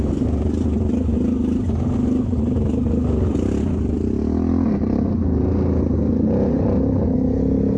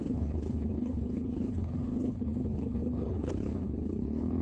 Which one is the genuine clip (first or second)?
first